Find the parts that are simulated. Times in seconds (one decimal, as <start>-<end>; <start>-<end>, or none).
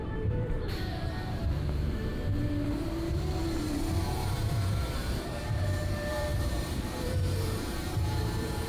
0.0-8.7